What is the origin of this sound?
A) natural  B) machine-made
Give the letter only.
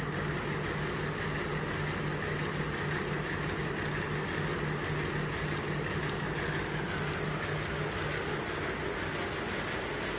A